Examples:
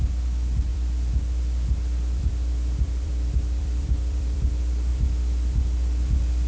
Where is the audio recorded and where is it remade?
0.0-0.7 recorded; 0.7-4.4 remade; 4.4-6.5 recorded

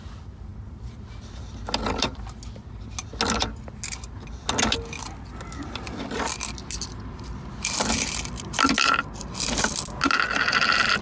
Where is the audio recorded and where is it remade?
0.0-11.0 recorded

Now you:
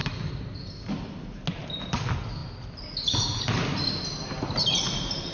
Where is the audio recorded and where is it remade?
0.0-5.3 recorded

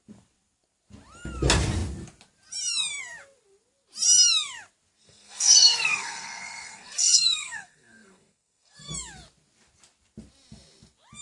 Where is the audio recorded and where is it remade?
0.0-5.0 recorded; 5.0-8.9 remade; 8.9-11.2 recorded

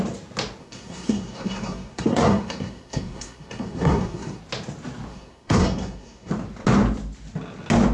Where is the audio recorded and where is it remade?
0.0-0.6 recorded; 0.6-4.4 remade; 4.4-5.1 recorded; 5.1-6.3 remade; 6.3-7.9 recorded

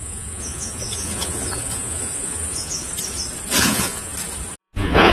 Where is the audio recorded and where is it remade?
0.0-2.9 remade; 2.9-3.6 recorded; 3.6-4.1 remade; 4.1-4.6 recorded; 4.6-5.1 remade

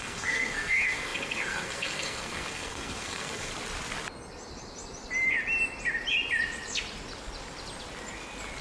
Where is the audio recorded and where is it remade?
0.0-3.5 remade; 3.5-8.6 recorded

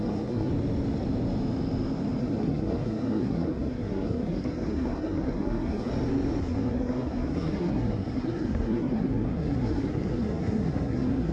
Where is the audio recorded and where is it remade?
0.0-0.5 remade; 0.5-2.2 recorded; 2.2-5.9 remade; 5.9-6.4 recorded; 6.4-11.3 remade